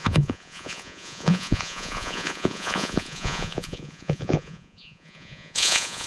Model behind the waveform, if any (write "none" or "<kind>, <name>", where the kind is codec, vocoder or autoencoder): vocoder, Vocos